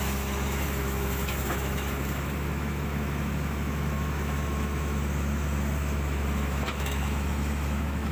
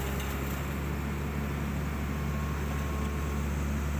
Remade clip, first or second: first